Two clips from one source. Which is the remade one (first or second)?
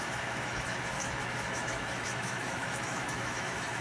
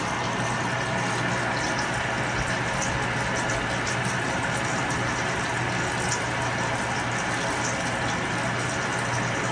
first